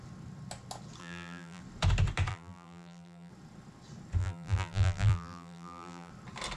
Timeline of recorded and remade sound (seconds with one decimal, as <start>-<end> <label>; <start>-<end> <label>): 0.0-1.0 recorded; 1.0-1.6 remade; 1.6-2.3 recorded; 2.3-3.3 remade; 3.3-4.2 recorded; 4.2-6.1 remade; 6.1-6.6 recorded